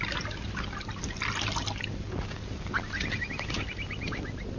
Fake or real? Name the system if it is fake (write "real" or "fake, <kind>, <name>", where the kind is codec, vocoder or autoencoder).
real